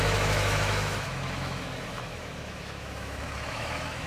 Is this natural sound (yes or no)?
no